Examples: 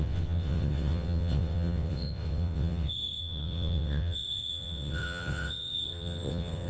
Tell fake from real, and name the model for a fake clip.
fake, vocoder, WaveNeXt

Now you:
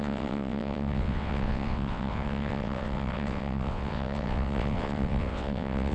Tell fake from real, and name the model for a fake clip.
fake, vocoder, WaveNeXt